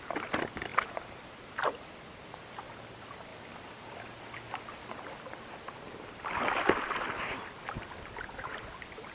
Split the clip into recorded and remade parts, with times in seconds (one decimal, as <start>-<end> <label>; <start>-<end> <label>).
0.0-9.1 recorded